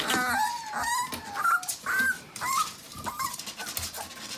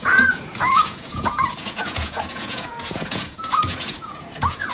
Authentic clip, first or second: first